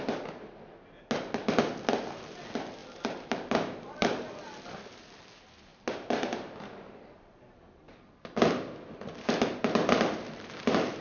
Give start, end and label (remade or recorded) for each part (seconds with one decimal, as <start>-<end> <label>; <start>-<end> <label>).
0.0-2.8 recorded; 2.8-3.5 remade; 3.5-5.7 recorded; 5.7-6.5 remade; 6.5-11.0 recorded